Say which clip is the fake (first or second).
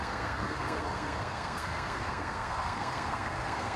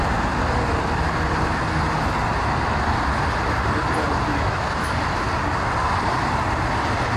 first